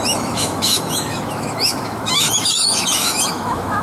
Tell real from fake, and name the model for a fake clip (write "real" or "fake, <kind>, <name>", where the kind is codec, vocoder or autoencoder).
fake, autoencoder, DAC-VAE